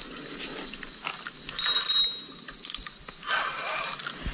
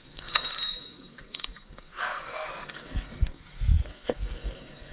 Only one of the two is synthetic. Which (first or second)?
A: second